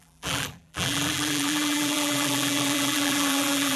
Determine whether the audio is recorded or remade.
remade